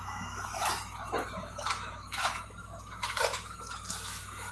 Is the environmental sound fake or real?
fake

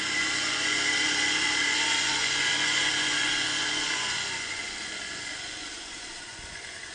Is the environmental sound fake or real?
fake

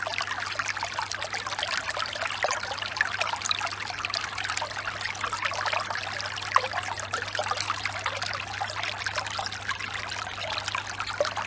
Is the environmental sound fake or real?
real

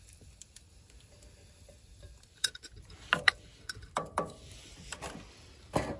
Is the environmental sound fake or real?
fake